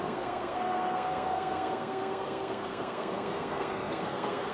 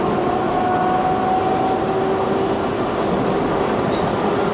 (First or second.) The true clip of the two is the second